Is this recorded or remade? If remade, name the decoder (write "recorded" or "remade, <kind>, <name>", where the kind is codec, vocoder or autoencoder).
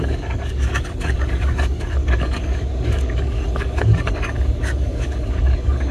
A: remade, codec, DAC